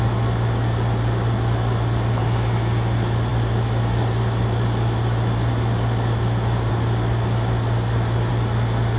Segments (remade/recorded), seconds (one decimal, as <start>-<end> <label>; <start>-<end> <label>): 0.0-9.0 recorded